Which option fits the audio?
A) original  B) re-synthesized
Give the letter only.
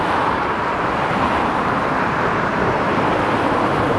B